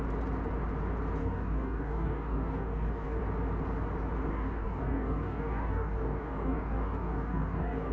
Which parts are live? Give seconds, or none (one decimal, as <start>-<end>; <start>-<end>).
0.0-1.2; 3.2-4.3